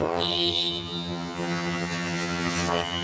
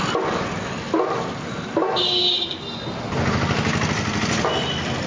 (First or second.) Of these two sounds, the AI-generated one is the first